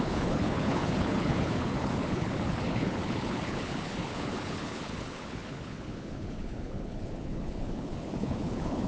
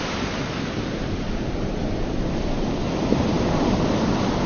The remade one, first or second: first